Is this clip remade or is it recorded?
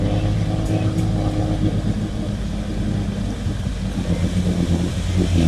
recorded